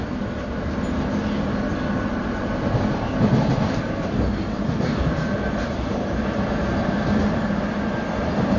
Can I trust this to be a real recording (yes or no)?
yes